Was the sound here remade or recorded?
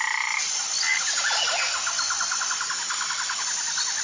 recorded